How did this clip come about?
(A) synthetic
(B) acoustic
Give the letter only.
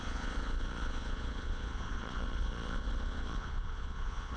A